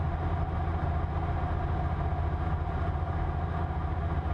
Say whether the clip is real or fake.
real